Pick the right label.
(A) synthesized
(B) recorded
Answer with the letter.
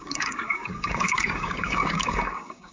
A